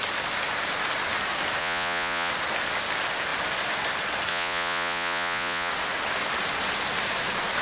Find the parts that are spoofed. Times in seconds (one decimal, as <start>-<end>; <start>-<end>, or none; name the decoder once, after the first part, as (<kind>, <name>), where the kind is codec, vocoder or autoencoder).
1.6-2.3 (vocoder, Vocos); 4.3-5.7